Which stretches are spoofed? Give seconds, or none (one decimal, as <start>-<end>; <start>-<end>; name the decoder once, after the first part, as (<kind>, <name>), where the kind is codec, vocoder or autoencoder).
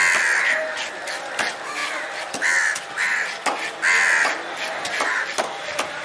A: none